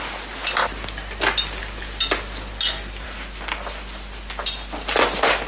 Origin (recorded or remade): recorded